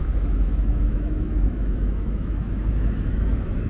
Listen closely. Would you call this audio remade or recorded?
remade